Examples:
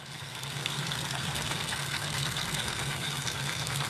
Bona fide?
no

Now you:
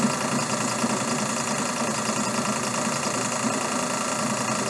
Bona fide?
yes